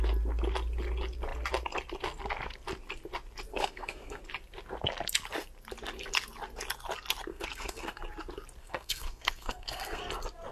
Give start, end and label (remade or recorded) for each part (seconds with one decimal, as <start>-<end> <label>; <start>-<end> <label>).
0.0-3.5 recorded; 3.5-4.2 remade; 4.2-7.3 recorded; 7.3-8.0 remade; 8.0-8.6 recorded; 8.6-10.0 remade; 10.0-10.5 recorded